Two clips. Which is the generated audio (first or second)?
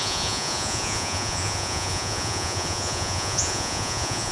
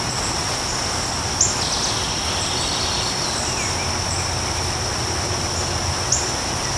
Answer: first